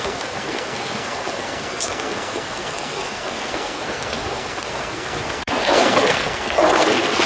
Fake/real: fake